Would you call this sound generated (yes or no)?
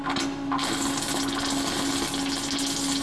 no